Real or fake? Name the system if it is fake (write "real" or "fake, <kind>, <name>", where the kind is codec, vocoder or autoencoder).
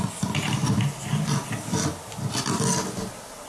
real